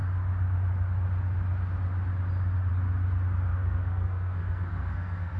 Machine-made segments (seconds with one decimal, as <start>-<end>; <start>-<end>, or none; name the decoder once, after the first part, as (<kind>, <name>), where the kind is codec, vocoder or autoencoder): 3.5-5.4 (codec, SNAC)